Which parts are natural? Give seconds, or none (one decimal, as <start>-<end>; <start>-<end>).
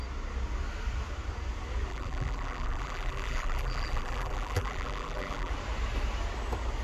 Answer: 0.0-1.9; 5.5-6.8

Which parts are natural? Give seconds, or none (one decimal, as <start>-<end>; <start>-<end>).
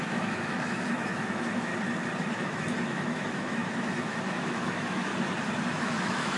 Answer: 1.7-2.2; 5.1-5.8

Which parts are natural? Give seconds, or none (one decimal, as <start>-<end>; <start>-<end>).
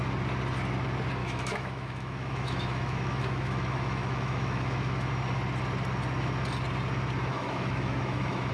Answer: 0.0-1.2; 5.1-7.3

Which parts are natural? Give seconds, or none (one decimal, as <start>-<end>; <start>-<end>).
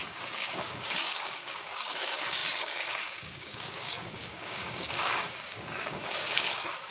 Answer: none